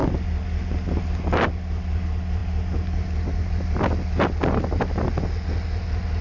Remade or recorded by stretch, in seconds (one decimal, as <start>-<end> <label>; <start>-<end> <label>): 0.0-6.2 recorded

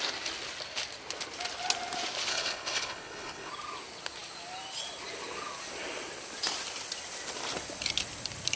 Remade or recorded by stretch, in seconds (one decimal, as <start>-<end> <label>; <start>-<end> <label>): 0.0-2.3 recorded; 2.3-3.5 remade; 3.5-8.6 recorded

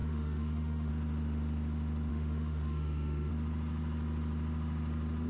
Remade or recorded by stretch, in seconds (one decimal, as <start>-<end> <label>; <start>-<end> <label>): 0.0-0.9 remade; 0.9-2.1 recorded; 2.1-3.3 remade; 3.3-5.3 recorded

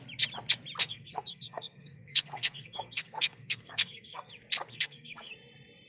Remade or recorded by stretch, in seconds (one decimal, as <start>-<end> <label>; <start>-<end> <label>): 0.0-0.8 recorded; 0.8-4.3 remade; 4.3-4.7 recorded; 4.7-5.3 remade; 5.3-5.9 recorded

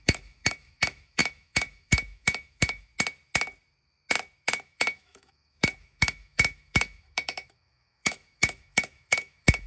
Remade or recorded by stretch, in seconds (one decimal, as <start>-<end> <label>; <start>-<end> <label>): 0.0-2.9 remade; 2.9-4.6 recorded; 4.6-9.7 remade